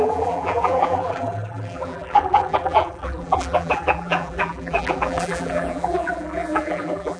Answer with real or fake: fake